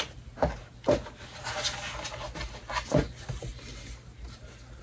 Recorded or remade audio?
recorded